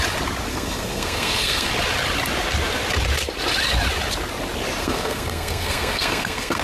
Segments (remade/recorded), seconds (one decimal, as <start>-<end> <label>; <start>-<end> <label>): 0.0-0.5 recorded; 0.5-1.7 remade; 1.7-4.8 recorded; 4.8-6.6 remade